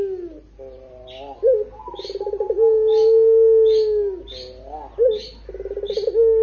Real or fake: real